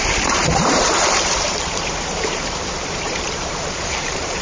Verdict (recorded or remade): remade